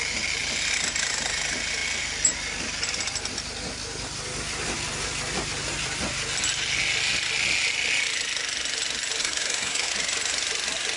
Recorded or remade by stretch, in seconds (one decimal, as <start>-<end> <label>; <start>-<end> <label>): 0.0-9.2 recorded; 9.2-9.9 remade; 9.9-11.0 recorded